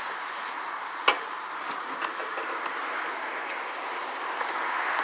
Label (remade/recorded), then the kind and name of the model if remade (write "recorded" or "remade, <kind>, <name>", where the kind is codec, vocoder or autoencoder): recorded